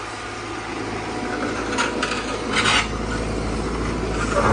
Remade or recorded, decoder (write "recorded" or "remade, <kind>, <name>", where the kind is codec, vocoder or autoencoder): recorded